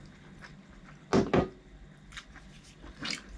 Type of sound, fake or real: real